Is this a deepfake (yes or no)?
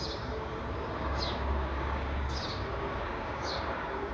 yes